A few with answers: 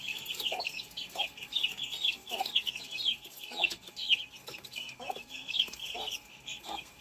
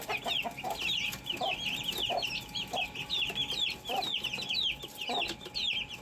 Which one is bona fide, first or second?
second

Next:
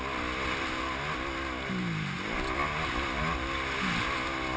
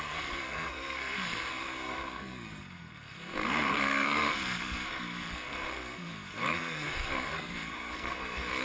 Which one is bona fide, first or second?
first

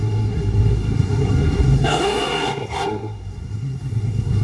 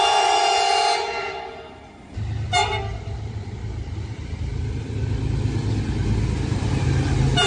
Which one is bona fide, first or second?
second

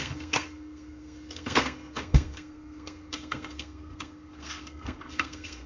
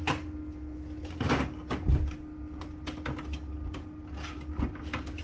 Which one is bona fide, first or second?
second